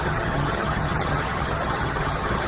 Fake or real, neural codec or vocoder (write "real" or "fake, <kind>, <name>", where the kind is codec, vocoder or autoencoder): fake, vocoder, HiFi-GAN